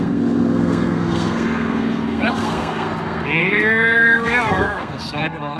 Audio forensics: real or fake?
fake